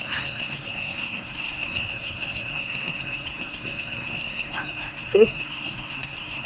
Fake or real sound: fake